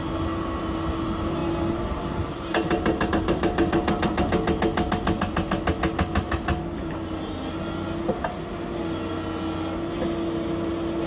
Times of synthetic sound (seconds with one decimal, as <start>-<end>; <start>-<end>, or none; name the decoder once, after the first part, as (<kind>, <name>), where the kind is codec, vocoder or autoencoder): none